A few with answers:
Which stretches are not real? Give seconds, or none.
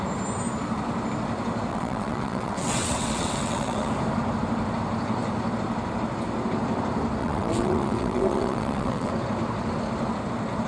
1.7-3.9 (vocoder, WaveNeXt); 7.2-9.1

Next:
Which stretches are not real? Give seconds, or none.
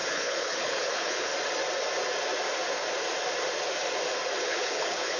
0.0-1.3 (codec, HILCodec); 4.4-5.2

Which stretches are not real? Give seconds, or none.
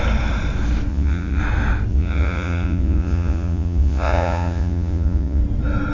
0.9-1.4 (vocoder, Vocos); 1.9-5.4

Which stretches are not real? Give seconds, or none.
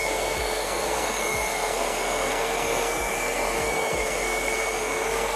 0.0-5.4 (codec, SNAC)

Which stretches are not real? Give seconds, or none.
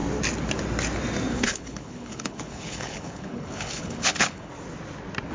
1.3-4.5 (codec, HILCodec)